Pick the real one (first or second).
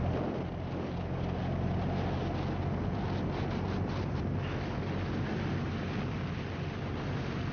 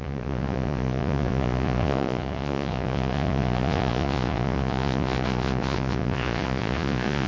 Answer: first